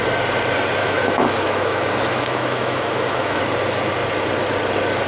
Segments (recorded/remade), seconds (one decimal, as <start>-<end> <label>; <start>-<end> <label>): 0.0-0.8 recorded; 0.8-3.4 remade; 3.4-5.1 recorded